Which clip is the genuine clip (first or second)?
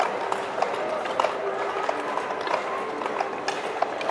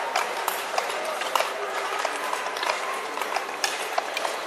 first